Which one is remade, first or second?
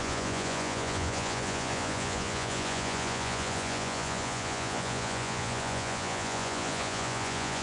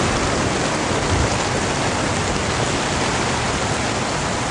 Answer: first